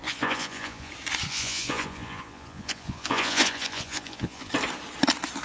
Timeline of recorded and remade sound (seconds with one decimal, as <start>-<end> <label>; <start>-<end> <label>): 0.0-0.9 remade; 0.9-1.3 recorded; 1.3-4.5 remade; 4.5-5.4 recorded

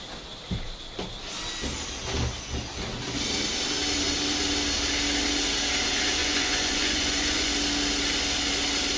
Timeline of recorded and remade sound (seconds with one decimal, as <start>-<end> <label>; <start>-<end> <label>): 0.0-6.2 recorded; 6.2-7.5 remade; 7.5-9.0 recorded

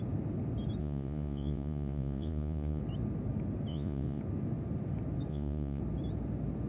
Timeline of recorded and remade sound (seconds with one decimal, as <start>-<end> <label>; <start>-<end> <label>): 0.0-0.8 recorded; 0.8-2.8 remade; 2.8-3.7 recorded; 3.7-4.2 remade; 4.2-5.3 recorded; 5.3-5.8 remade; 5.8-6.7 recorded

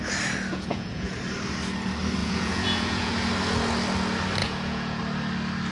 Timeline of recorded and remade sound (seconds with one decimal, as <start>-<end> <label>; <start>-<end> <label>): 0.0-0.5 recorded; 0.5-1.2 remade; 1.2-2.2 recorded; 2.2-3.1 remade; 3.1-4.4 recorded; 4.4-5.0 remade; 5.0-5.7 recorded

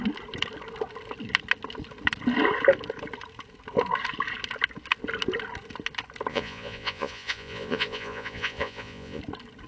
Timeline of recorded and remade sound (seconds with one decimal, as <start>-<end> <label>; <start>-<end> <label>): 0.0-6.3 recorded; 6.3-9.2 remade; 9.2-9.7 recorded